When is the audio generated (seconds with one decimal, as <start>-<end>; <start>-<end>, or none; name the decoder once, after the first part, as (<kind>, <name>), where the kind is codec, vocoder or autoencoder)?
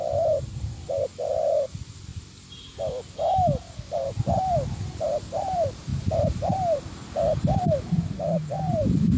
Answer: 0.0-2.1 (vocoder, BigVGAN v2); 3.9-9.2